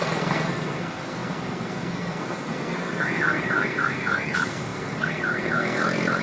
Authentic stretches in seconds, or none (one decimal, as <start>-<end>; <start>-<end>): none